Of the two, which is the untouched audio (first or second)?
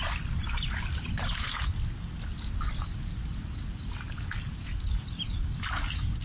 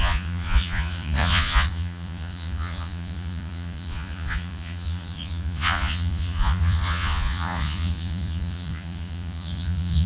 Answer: first